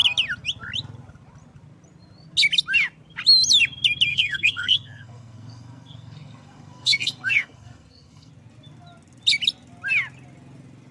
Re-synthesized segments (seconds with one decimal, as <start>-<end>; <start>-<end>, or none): 4.1-8.3